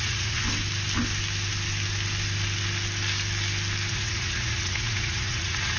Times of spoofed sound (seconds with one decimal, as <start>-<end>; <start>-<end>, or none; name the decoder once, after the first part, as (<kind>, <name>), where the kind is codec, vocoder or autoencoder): 0.0-0.4 (vocoder, Vocos); 3.9-5.8